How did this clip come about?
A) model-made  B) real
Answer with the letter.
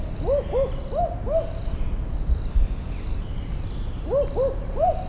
B